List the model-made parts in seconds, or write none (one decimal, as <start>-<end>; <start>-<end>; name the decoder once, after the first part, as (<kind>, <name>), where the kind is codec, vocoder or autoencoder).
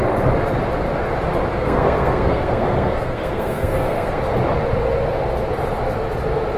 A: 1.6-4.2 (codec, SNAC)